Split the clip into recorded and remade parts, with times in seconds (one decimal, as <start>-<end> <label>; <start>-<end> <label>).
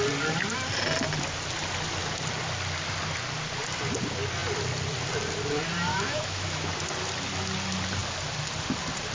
0.0-5.9 recorded; 5.9-6.7 remade; 6.7-9.1 recorded